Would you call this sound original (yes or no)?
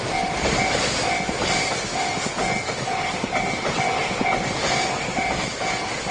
yes